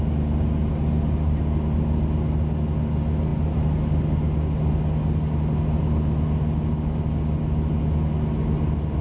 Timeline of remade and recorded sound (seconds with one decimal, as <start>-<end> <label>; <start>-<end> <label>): 0.0-9.0 recorded